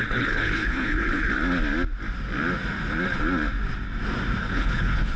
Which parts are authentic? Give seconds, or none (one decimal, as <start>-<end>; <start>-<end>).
1.3-4.4